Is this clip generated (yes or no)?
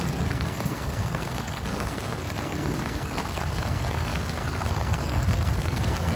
yes